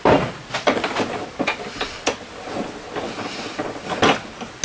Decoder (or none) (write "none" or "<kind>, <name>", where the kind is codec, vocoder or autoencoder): none